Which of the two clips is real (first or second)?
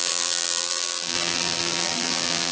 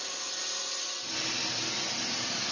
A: second